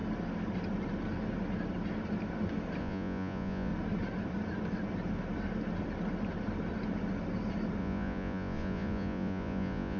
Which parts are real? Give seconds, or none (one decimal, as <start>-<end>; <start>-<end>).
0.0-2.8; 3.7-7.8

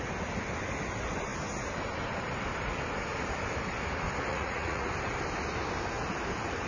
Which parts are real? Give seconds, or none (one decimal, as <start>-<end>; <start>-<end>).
0.0-4.3; 4.9-6.7

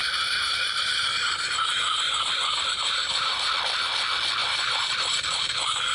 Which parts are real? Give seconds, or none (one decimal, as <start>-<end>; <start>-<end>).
3.5-4.4; 5.4-5.9

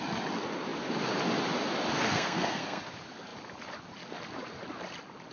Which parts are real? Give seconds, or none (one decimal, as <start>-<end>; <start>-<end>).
0.0-1.9; 2.8-5.3